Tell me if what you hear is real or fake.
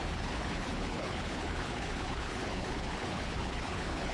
fake